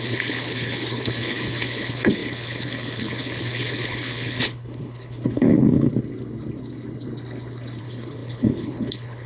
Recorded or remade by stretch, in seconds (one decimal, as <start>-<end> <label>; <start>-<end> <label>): 0.0-5.9 remade; 5.9-7.8 recorded; 7.8-9.3 remade